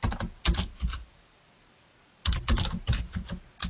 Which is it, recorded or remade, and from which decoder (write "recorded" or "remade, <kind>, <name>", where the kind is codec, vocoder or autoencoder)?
recorded